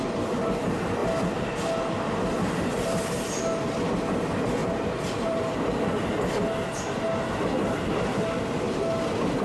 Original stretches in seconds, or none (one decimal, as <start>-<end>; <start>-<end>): 0.0-4.6; 5.6-9.4